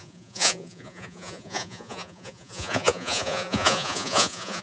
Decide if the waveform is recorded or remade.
remade